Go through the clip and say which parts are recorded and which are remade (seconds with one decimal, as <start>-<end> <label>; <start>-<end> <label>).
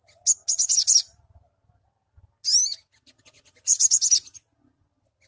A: 0.0-5.3 recorded